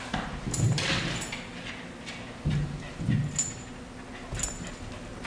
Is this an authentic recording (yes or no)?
yes